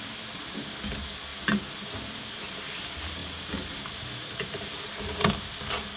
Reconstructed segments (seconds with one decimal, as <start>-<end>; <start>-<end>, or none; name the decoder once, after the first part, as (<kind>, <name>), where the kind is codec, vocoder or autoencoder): 3.2-4.9 (vocoder, BigVGAN v2)